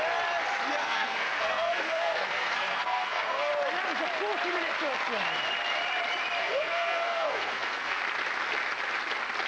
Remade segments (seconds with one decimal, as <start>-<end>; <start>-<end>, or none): 0.8-3.5; 6.4-8.0